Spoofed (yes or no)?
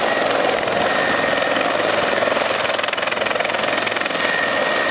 no